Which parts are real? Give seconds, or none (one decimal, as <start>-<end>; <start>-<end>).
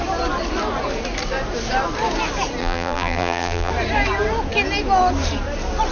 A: 0.0-2.6; 3.7-5.9